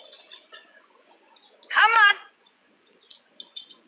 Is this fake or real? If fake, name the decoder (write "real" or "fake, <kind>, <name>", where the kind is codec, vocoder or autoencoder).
fake, vocoder, Vocos